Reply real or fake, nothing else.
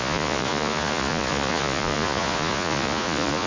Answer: fake